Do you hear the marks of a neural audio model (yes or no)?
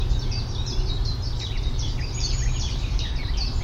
yes